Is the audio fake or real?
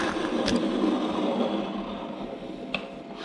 real